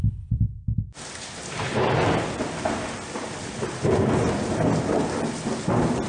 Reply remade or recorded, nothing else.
recorded